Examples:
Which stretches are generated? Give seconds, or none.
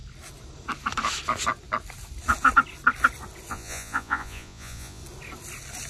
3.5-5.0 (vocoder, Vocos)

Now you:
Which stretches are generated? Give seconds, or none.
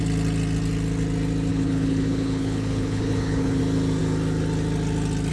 1.5-3.6 (codec, HILCodec)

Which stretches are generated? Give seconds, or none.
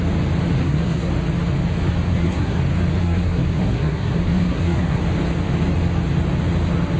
0.6-1.1 (codec, SNAC); 2.1-2.6; 3.0-5.0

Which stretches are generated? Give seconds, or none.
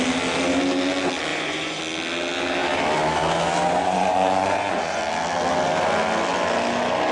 1.3-1.8 (vocoder, Vocos); 3.8-5.0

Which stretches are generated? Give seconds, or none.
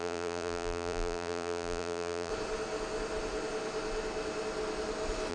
0.0-2.3 (vocoder, BigVGAN v2)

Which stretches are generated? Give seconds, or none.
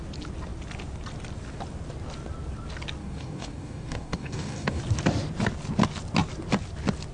3.0-4.8 (codec, DAC)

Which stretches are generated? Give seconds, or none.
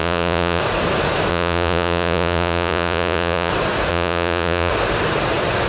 0.0-0.6 (vocoder, Vocos); 1.3-3.5; 3.9-4.7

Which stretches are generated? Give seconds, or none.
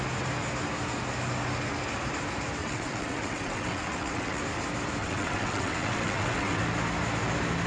2.6-4.4 (vocoder, WaveNeXt); 5.0-6.6